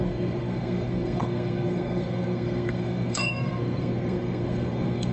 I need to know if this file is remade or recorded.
remade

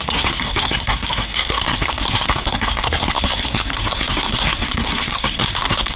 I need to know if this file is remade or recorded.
remade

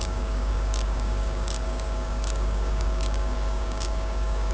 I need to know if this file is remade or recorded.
remade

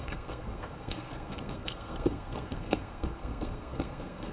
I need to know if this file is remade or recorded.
remade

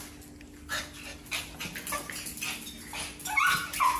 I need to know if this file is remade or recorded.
recorded